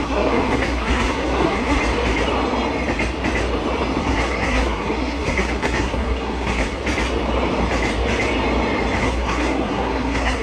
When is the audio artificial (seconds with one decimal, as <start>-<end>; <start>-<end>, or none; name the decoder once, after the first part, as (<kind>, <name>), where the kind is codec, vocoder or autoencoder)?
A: 0.0-1.8 (codec, SNAC); 4.0-6.8; 9.0-10.4